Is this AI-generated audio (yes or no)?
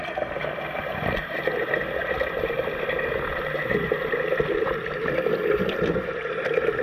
yes